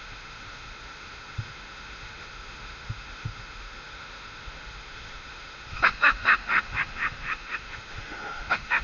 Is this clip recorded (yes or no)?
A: no